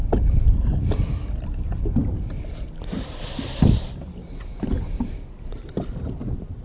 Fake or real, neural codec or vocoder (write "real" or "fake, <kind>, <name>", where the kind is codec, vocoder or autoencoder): real